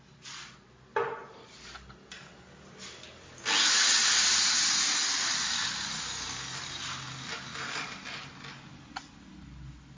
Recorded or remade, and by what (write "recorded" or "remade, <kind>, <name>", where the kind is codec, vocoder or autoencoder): recorded